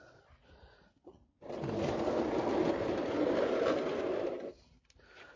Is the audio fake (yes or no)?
no